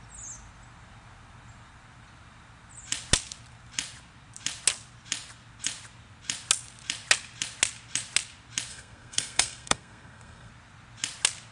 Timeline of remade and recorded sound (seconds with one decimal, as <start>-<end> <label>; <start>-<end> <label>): 0.0-8.7 recorded; 8.7-10.5 remade; 10.5-11.5 recorded